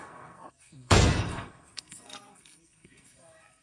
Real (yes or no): no